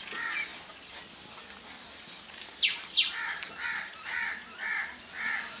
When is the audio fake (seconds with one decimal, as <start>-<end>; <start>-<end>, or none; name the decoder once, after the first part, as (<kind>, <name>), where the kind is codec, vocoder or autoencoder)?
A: none